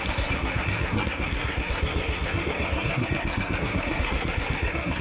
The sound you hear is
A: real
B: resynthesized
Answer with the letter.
B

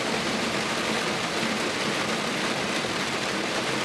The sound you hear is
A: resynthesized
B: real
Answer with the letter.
B